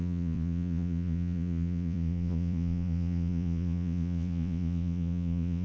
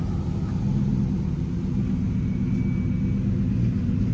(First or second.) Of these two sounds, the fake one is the first